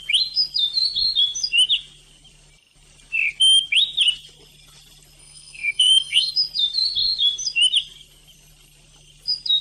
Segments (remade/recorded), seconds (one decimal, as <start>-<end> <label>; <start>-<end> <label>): 0.0-5.2 recorded; 5.2-6.3 remade; 6.3-9.6 recorded